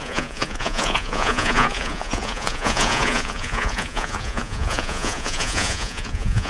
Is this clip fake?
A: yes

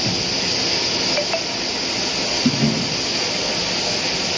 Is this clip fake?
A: no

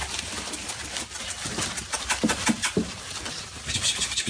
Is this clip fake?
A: no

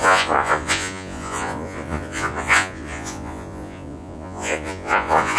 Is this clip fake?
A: yes